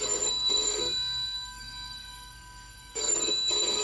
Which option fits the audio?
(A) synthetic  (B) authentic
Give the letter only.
A